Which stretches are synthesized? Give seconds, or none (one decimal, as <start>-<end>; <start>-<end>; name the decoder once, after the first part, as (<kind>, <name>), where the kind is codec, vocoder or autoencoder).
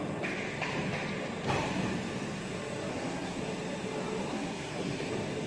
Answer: 2.9-3.4 (codec, SNAC); 4.3-5.1